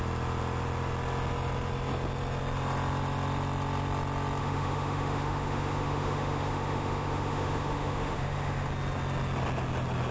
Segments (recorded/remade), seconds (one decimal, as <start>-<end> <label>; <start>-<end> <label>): 0.0-4.4 recorded; 4.4-8.7 remade; 8.7-10.1 recorded